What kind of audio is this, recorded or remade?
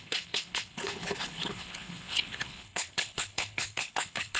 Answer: remade